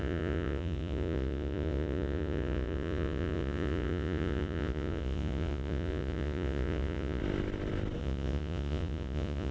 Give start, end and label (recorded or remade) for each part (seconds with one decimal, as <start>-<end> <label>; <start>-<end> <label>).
0.0-7.2 remade; 7.2-8.0 recorded; 8.0-9.5 remade